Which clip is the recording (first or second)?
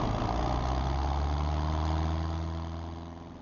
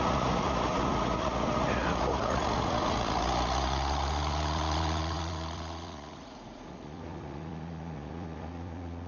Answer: first